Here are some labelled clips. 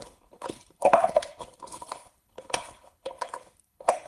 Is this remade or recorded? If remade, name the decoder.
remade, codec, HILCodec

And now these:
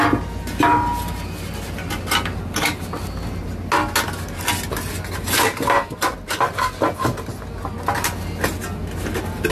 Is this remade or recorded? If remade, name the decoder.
recorded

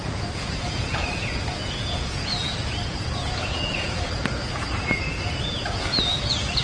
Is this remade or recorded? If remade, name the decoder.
remade, vocoder, Vocos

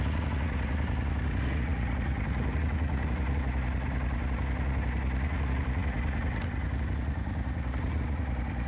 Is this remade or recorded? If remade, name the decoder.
remade, vocoder, Vocos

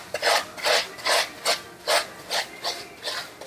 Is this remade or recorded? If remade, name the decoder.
recorded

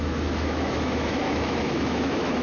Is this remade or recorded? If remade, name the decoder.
remade, autoencoder, DAC-VAE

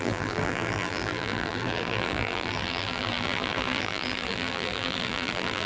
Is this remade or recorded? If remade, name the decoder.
remade, vocoder, BigVGAN v2